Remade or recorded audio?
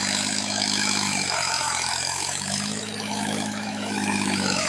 remade